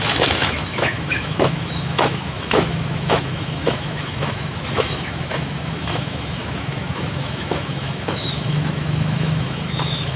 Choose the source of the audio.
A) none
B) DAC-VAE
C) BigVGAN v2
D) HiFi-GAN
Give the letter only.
B